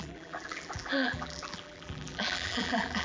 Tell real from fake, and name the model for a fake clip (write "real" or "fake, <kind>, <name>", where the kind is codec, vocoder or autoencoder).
fake, vocoder, BigVGAN v2